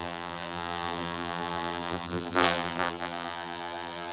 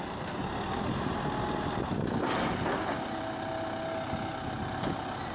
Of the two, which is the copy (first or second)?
first